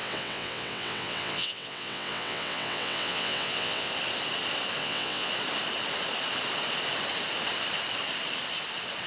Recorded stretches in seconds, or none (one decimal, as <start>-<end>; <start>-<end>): 3.9-4.8; 5.3-9.1